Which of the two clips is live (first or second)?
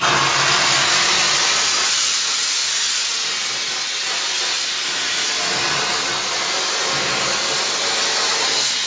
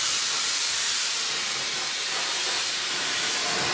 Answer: first